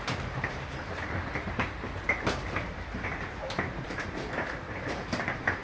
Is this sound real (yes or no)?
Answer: no